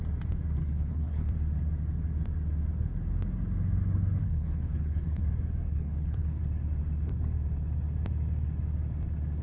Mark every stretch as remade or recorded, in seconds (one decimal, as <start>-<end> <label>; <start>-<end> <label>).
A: 0.0-0.6 recorded; 0.6-1.3 remade; 1.3-4.2 recorded; 4.2-5.2 remade; 5.2-5.7 recorded; 5.7-6.4 remade; 6.4-9.4 recorded